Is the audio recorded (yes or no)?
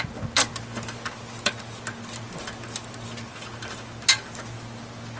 yes